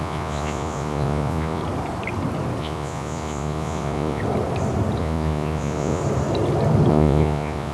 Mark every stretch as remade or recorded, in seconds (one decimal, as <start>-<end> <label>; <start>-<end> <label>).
0.0-1.6 remade; 1.6-2.6 recorded; 2.6-4.2 remade; 4.2-5.0 recorded; 5.0-6.0 remade; 6.0-6.9 recorded; 6.9-7.7 remade